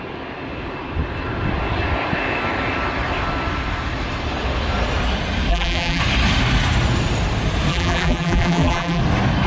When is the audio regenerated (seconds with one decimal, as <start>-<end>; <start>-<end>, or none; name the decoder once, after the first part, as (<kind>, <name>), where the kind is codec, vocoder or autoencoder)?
5.5-6.0 (vocoder, BigVGAN v2); 7.7-9.0